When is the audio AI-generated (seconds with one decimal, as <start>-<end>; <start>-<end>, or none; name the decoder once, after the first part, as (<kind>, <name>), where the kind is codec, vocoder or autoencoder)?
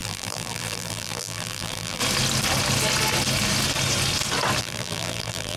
0.0-2.0 (vocoder, BigVGAN v2); 4.6-5.6